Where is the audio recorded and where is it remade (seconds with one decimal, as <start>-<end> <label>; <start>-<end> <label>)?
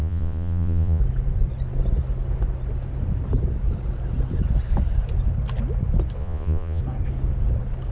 0.0-1.0 remade; 1.0-6.2 recorded; 6.2-6.8 remade; 6.8-7.9 recorded